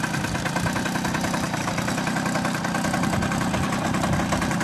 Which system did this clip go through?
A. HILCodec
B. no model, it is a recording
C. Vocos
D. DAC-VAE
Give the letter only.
B